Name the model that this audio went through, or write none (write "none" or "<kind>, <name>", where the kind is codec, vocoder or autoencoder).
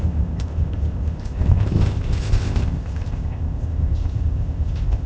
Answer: codec, ZipCodec